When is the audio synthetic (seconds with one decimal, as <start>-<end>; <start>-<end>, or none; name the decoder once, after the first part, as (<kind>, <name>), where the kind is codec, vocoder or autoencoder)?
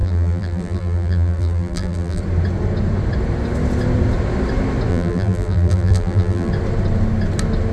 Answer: 0.0-2.2 (vocoder, BigVGAN v2); 4.9-6.5